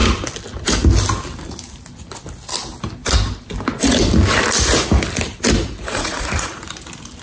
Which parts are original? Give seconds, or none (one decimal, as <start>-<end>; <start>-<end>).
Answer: 0.0-5.6; 6.6-7.2